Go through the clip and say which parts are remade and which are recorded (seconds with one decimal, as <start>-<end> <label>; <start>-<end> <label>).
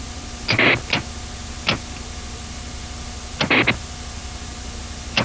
0.0-5.2 recorded